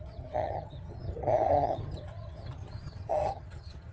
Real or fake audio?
fake